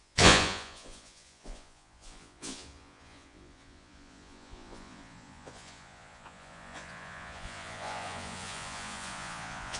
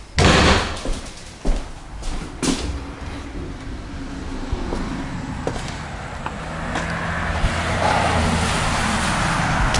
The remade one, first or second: first